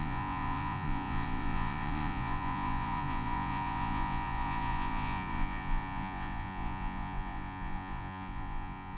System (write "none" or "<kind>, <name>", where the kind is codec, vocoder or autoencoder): vocoder, Vocos